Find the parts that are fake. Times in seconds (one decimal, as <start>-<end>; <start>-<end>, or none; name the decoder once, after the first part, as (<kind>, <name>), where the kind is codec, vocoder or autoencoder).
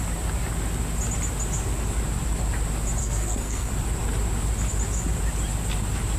3.0-3.7 (codec, SNAC)